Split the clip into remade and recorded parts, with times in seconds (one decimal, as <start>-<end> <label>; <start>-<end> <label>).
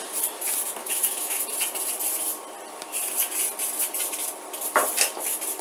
0.0-0.8 recorded; 0.8-1.4 remade; 1.4-5.6 recorded